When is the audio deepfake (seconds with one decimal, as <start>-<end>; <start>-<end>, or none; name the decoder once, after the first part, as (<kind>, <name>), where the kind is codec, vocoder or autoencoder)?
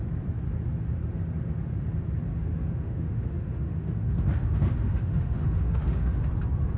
2.3-6.3 (autoencoder, DAC-VAE)